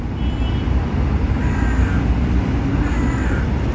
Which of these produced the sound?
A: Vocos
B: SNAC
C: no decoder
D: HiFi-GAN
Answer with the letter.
C